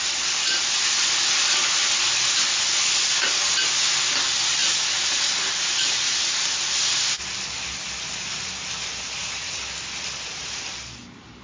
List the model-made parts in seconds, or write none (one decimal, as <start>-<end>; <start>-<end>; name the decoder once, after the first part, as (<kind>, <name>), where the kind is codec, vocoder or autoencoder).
none

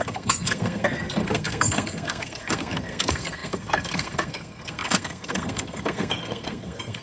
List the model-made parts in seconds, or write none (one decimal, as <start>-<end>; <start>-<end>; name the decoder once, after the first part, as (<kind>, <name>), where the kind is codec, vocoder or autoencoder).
0.0-7.0 (codec, SNAC)

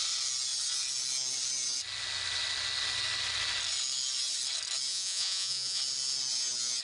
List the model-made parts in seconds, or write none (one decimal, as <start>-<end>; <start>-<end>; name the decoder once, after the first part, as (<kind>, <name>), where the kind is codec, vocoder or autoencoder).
4.9-5.8 (vocoder, Vocos)

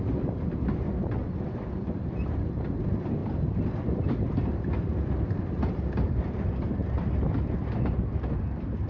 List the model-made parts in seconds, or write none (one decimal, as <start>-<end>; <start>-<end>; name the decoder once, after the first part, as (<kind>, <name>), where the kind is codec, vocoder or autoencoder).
0.0-6.8 (vocoder, BigVGAN v2); 8.3-8.9

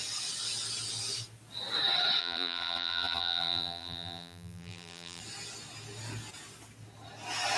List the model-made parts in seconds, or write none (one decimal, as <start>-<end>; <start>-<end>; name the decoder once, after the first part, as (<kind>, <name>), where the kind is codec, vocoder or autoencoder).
2.2-5.2 (vocoder, BigVGAN v2)

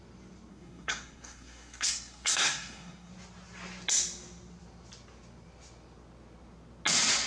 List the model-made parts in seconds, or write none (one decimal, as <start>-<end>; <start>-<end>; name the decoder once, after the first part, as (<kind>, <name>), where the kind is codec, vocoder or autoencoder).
0.5-3.1 (codec, SNAC)

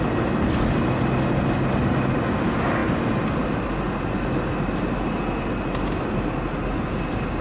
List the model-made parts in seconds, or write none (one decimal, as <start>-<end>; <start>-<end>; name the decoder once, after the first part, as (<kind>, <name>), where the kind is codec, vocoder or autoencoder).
none

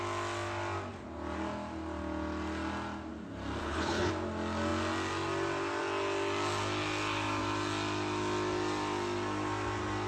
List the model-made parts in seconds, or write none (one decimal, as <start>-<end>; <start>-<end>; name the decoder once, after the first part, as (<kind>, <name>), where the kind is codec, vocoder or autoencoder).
3.6-4.1 (codec, HILCodec)